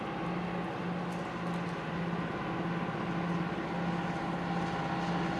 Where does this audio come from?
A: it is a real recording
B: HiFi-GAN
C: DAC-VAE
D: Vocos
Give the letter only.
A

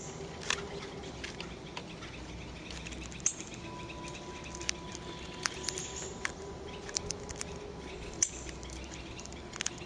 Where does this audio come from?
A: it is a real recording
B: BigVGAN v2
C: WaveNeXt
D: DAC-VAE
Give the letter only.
A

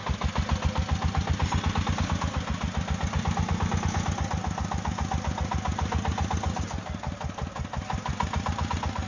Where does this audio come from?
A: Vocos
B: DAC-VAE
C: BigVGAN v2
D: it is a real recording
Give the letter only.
D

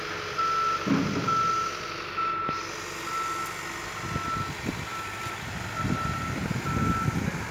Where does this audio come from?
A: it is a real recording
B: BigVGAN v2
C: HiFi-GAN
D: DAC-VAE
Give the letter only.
A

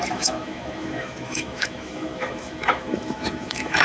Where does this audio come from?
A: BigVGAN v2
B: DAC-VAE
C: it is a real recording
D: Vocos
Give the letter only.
B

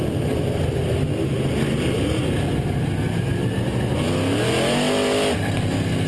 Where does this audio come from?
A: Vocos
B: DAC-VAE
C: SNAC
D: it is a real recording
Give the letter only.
D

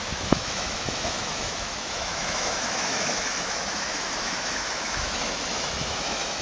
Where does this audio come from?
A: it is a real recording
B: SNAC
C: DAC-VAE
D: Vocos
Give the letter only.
C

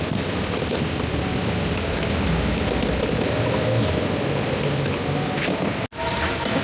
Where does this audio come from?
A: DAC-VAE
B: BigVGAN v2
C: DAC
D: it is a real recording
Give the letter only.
D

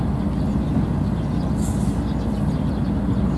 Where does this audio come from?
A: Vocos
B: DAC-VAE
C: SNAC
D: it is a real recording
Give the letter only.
D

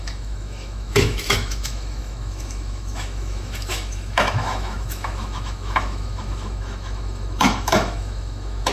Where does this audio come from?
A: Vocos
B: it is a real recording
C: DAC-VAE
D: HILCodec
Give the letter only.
C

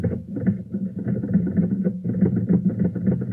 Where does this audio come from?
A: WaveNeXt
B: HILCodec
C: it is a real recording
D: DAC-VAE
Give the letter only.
C